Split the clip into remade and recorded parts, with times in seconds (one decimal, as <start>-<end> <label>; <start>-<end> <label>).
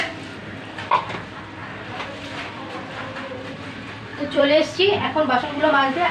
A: 0.0-1.6 recorded; 1.6-2.9 remade; 2.9-4.1 recorded; 4.1-4.8 remade; 4.8-6.1 recorded